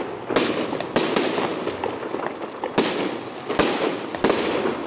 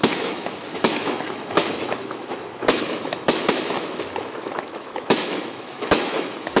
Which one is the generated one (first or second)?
second